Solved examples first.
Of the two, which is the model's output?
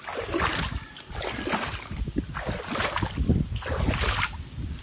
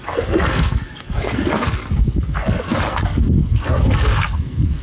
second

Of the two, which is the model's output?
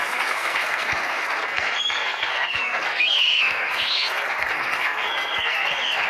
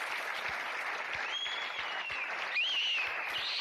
first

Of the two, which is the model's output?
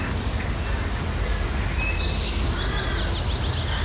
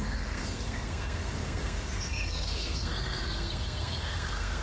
second